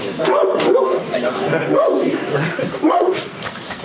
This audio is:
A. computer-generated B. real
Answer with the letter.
A